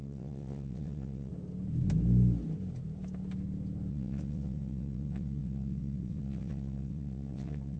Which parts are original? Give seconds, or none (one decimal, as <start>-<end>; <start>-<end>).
1.3-3.9